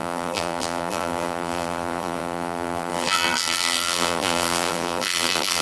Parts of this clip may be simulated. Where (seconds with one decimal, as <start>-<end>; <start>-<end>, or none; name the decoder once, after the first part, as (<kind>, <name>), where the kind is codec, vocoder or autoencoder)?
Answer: 0.0-5.6 (vocoder, BigVGAN v2)